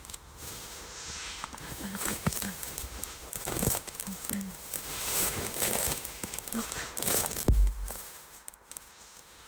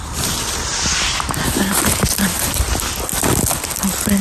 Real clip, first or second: second